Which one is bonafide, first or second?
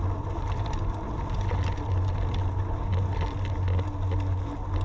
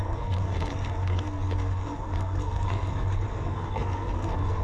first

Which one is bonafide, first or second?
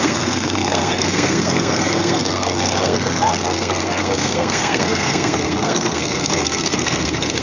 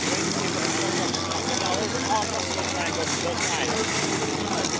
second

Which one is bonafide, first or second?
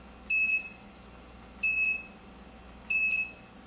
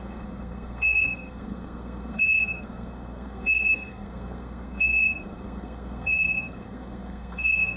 first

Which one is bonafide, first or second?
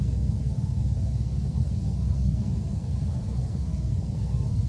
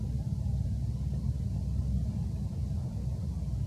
second